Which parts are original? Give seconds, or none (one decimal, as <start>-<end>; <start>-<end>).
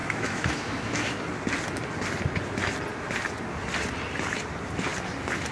1.2-5.5